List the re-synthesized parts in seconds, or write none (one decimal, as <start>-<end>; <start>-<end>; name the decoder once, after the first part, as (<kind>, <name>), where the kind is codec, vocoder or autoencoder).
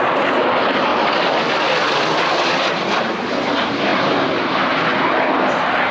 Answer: none